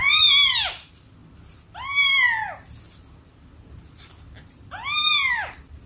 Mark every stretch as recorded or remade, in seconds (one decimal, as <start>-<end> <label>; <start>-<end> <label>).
0.0-5.9 recorded